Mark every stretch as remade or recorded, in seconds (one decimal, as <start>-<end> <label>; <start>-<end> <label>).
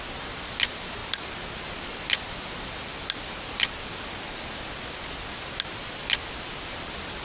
0.0-7.2 recorded